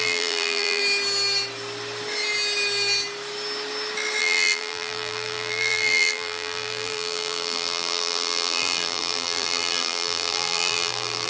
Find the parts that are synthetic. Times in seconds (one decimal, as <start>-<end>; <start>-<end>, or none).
0.0-0.8; 4.2-11.3